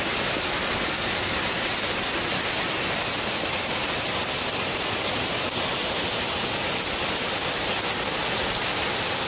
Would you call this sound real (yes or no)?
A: yes